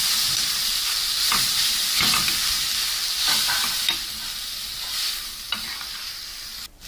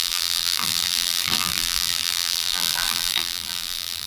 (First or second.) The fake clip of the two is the second